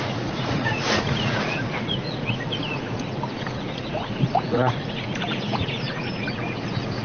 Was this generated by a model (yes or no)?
yes